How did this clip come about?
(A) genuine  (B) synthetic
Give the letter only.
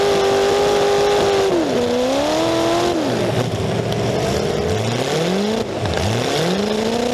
A